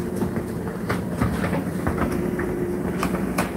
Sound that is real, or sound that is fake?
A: fake